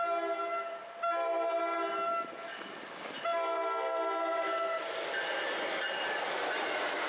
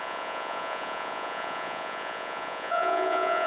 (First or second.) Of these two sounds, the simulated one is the second